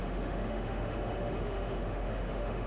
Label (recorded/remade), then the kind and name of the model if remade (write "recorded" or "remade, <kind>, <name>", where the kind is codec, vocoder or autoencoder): remade, autoencoder, DAC-VAE